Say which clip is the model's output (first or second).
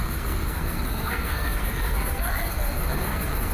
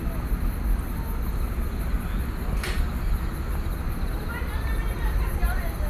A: first